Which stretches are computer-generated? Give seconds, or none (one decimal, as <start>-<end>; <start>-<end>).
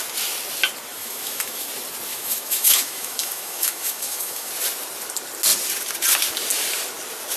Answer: 0.9-1.7; 2.1-4.5